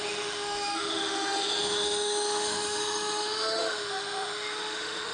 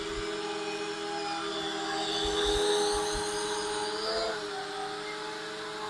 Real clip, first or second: second